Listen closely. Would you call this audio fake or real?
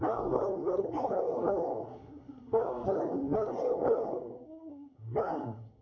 fake